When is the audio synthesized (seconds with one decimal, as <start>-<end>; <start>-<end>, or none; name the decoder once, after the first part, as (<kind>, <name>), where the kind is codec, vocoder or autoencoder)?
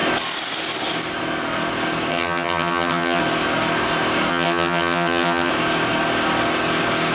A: 2.1-3.2 (vocoder, HiFi-GAN); 4.3-5.5